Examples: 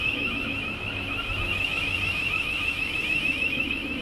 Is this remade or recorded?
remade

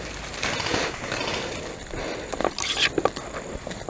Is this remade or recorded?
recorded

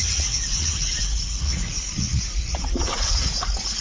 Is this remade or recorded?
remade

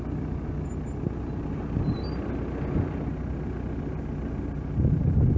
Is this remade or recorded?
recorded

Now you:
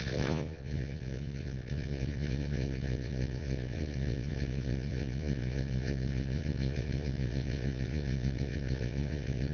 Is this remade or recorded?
remade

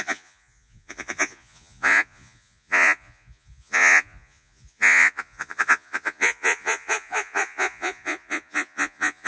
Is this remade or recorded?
remade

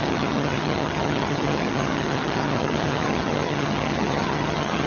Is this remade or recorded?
remade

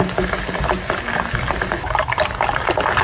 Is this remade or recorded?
recorded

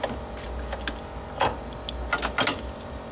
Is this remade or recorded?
recorded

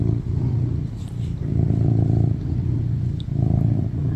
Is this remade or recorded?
remade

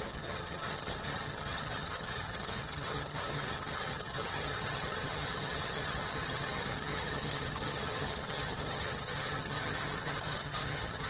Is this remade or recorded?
remade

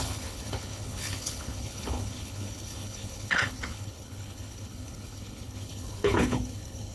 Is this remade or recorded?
remade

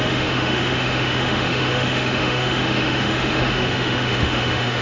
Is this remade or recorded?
remade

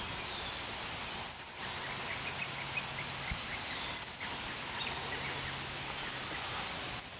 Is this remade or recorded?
recorded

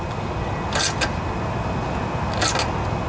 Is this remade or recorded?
recorded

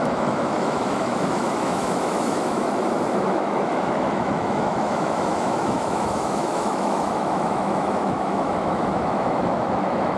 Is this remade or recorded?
remade